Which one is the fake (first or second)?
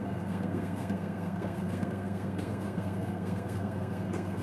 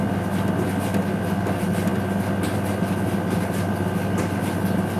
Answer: first